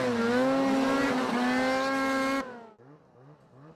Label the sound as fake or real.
real